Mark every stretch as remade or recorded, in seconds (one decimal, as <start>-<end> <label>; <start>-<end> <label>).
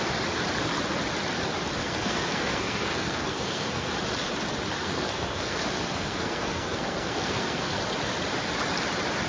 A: 0.0-1.8 recorded; 1.8-3.9 remade; 3.9-4.8 recorded; 4.8-7.8 remade; 7.8-9.3 recorded